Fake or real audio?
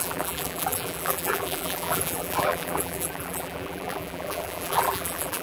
fake